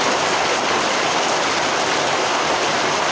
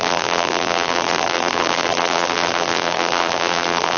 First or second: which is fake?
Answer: second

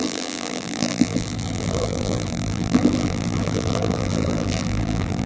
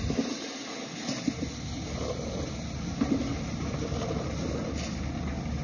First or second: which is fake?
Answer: first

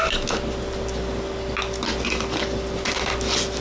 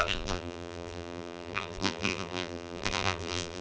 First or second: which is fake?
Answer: second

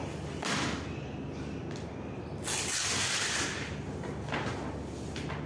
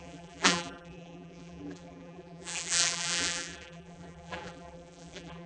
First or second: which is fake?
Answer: second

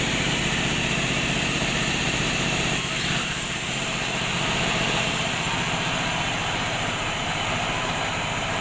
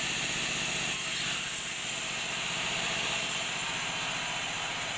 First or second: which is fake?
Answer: first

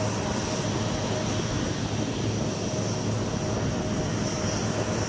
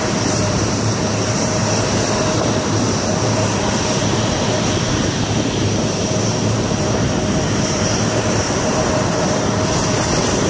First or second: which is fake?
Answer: second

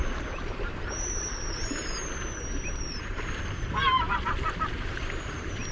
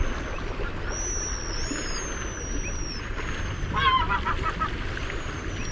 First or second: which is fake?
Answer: first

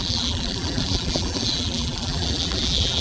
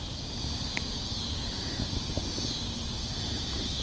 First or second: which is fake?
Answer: first